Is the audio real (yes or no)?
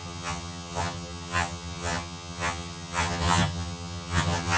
no